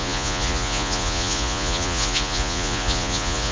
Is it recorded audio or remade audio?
remade